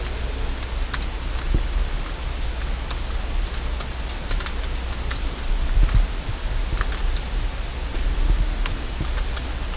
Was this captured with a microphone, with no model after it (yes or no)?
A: yes